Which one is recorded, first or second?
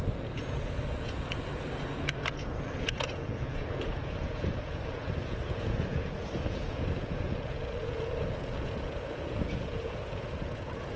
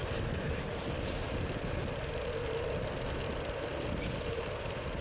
second